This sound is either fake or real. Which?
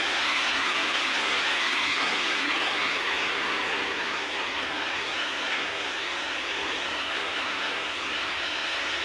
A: fake